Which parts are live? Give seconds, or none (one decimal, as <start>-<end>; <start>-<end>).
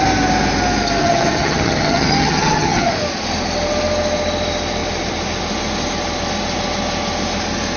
0.0-1.0; 2.9-7.8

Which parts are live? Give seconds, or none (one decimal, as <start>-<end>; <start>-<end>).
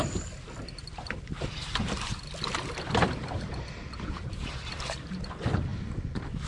0.0-0.8; 4.7-6.5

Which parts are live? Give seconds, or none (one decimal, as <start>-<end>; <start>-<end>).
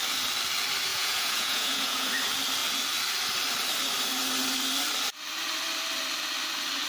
0.0-0.9; 2.1-6.9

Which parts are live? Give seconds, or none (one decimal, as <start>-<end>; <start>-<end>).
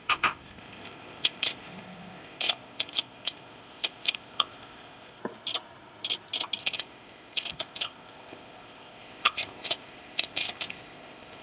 5.2-6.6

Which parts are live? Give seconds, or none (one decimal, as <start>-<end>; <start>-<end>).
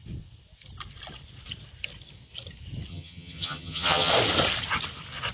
0.0-2.9; 4.1-5.3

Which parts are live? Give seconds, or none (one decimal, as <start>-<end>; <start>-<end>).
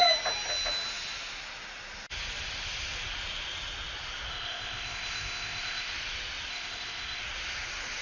0.0-4.3; 5.9-6.5; 7.2-8.0